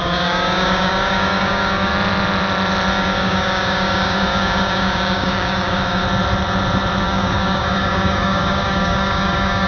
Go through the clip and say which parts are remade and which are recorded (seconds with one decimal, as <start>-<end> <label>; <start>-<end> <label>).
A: 0.0-1.9 remade; 1.9-2.9 recorded; 2.9-6.0 remade; 6.0-7.0 recorded; 7.0-9.7 remade

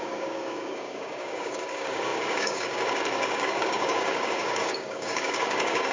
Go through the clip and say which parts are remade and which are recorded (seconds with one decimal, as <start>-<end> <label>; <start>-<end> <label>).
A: 0.0-5.9 remade